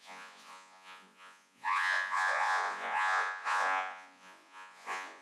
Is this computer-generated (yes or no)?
yes